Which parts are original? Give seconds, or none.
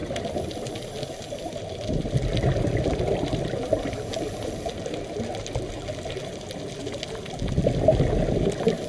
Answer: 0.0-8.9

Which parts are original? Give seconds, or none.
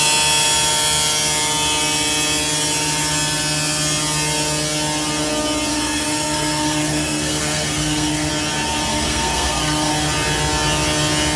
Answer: 0.0-5.7; 8.3-8.9; 9.9-11.4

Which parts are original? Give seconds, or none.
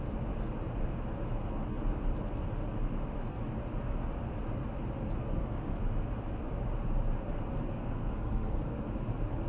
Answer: 0.0-5.2; 5.8-7.5; 8.8-9.5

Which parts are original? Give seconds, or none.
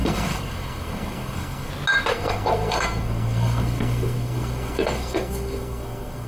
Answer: 1.7-2.1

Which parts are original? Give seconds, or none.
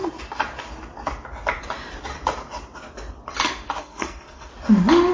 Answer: 0.0-3.8; 4.5-5.1